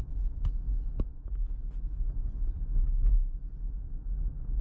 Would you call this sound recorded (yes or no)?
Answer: yes